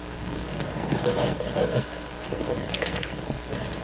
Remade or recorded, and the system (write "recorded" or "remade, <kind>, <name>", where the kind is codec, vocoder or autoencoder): remade, codec, SNAC